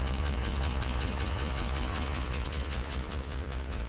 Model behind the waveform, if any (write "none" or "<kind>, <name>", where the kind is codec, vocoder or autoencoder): vocoder, Vocos